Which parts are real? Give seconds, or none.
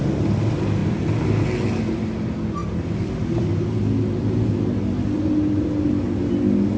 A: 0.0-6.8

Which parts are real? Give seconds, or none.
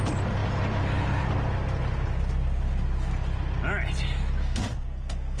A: 0.0-4.4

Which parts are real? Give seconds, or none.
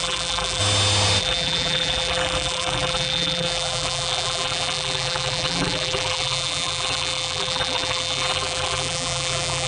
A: 0.6-1.2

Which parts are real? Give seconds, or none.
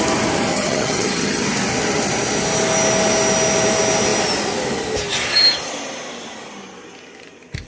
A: 0.0-0.5; 1.4-7.7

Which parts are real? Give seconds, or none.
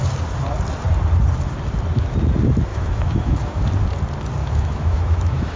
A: 0.0-2.7; 3.6-4.4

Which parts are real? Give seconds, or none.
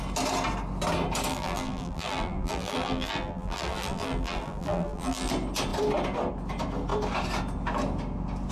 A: 0.0-1.3; 5.3-8.5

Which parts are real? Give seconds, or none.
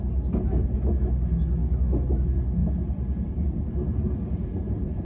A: 0.0-5.0